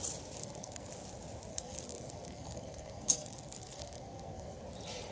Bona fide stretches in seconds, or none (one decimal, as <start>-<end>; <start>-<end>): 0.0-0.4; 0.9-1.5; 4.6-5.1